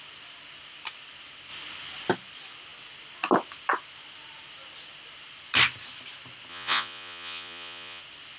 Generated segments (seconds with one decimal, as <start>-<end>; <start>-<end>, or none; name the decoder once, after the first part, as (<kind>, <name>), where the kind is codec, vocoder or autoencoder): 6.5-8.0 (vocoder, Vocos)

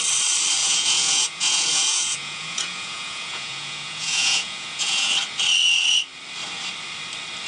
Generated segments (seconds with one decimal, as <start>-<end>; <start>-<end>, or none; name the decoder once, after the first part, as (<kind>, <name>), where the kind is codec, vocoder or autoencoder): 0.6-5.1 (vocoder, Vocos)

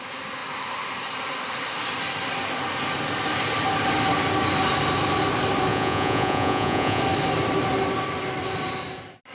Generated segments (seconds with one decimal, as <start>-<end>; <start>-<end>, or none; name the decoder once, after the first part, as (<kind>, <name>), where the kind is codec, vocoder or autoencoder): 5.7-7.0 (vocoder, Vocos)